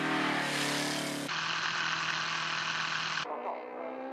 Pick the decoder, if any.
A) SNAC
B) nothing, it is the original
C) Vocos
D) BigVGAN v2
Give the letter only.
B